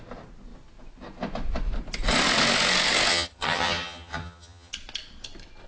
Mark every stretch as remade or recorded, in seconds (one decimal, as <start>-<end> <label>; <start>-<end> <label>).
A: 0.0-3.1 recorded; 3.1-4.7 remade; 4.7-5.7 recorded